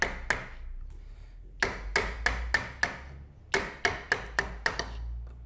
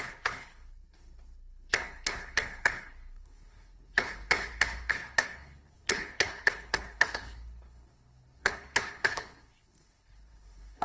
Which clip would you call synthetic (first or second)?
second